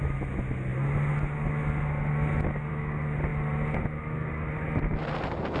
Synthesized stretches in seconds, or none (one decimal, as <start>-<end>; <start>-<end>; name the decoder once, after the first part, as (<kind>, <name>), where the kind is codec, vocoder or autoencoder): none